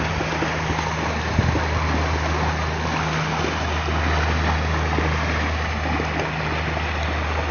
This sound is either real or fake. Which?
real